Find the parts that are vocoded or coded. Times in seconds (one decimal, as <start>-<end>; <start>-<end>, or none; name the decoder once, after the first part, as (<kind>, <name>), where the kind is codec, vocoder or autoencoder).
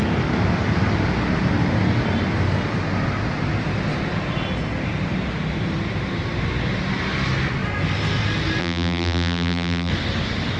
8.6-9.9 (vocoder, BigVGAN v2)